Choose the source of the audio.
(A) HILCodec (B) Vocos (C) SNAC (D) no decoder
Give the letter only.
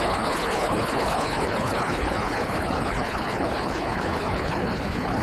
A